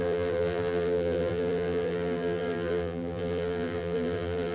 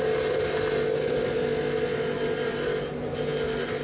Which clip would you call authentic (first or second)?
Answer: second